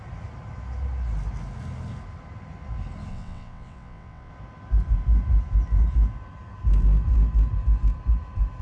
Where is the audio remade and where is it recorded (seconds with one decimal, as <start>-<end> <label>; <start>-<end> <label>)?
0.0-3.1 recorded; 3.1-4.3 remade; 4.3-8.6 recorded